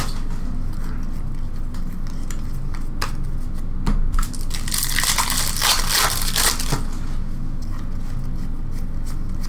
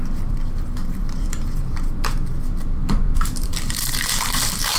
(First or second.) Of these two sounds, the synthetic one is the second